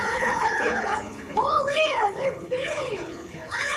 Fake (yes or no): yes